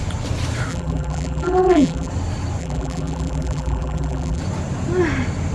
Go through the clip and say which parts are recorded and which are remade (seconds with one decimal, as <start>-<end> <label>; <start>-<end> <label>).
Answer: 0.0-0.7 recorded; 0.7-2.1 remade; 2.1-2.6 recorded; 2.6-4.4 remade; 4.4-5.5 recorded